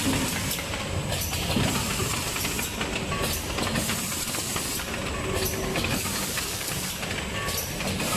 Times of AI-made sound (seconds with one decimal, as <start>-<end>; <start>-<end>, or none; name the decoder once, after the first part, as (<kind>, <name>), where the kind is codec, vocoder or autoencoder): 5.7-6.9 (codec, DAC)